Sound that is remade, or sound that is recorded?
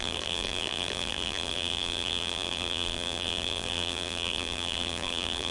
remade